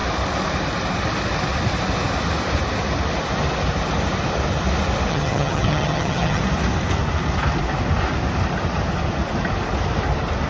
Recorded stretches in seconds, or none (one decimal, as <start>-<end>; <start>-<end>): 0.0-5.1; 6.4-10.5